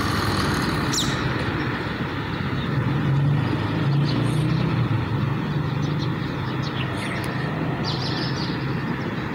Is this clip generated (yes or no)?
no